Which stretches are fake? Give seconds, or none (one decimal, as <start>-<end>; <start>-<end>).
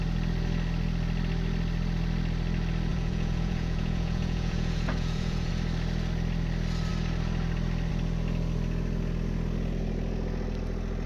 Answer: 2.9-5.5